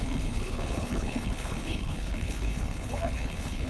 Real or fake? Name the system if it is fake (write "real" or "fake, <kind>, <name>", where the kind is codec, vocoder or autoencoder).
fake, codec, HILCodec